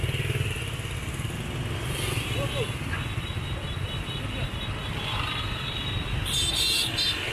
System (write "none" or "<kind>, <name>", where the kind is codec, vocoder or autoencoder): none